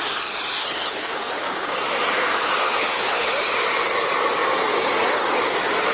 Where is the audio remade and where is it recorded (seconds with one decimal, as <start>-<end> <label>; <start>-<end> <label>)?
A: 0.0-0.6 recorded; 0.6-1.7 remade; 1.7-2.6 recorded; 2.6-3.3 remade; 3.3-5.9 recorded